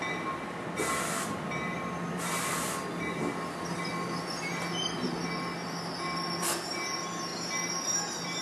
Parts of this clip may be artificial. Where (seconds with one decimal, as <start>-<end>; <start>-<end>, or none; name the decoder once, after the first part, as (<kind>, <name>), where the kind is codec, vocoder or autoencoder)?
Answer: none